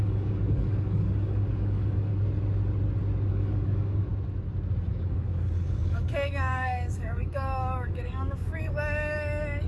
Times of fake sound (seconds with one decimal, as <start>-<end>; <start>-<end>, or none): 0.0-2.1; 3.3-4.1; 4.9-9.7